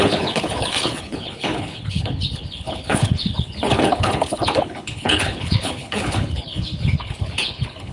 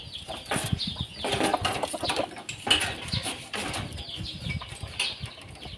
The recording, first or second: second